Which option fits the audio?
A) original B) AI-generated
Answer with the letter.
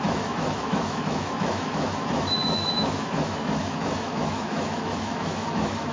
B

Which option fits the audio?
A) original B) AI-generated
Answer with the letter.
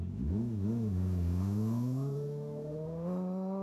B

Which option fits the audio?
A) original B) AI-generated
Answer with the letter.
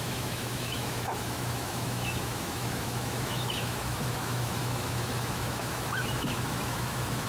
B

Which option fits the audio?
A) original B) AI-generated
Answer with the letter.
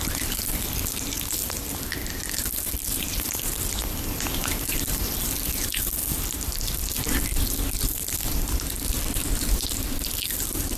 A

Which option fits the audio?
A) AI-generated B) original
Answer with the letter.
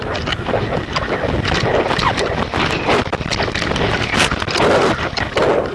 B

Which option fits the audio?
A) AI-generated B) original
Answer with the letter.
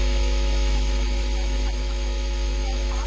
A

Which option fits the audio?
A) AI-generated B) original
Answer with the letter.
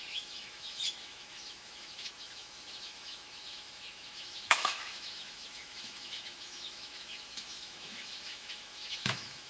A